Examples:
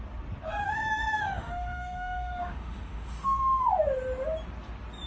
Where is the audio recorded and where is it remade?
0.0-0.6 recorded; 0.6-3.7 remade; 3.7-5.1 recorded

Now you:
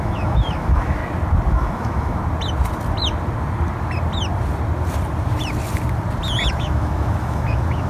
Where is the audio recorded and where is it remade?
0.0-1.0 remade; 1.0-1.5 recorded; 1.5-2.2 remade; 2.2-6.5 recorded; 6.5-7.9 remade

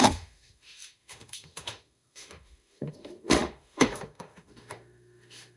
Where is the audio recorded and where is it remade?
0.0-5.6 remade

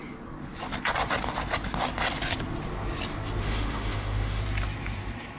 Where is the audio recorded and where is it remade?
0.0-3.4 recorded; 3.4-4.4 remade; 4.4-5.4 recorded

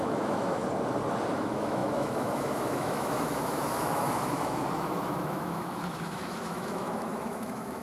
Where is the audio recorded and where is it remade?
0.0-0.6 remade; 0.6-1.3 recorded; 1.3-7.8 remade